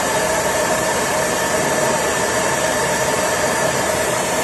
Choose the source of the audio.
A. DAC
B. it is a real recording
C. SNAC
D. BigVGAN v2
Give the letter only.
D